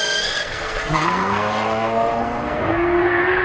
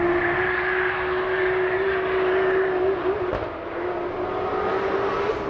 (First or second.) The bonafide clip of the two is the second